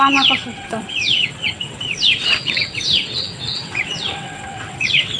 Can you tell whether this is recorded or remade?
remade